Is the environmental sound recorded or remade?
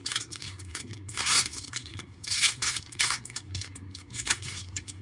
remade